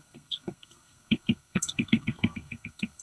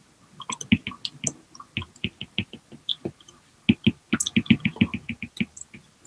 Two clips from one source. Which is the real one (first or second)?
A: second